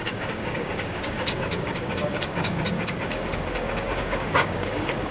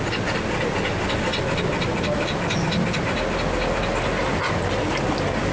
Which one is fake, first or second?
first